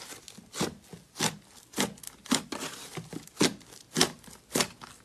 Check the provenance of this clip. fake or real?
real